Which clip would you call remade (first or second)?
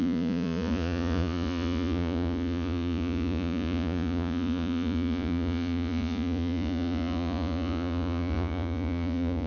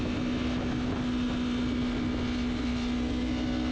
first